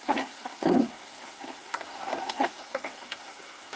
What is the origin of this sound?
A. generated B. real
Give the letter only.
A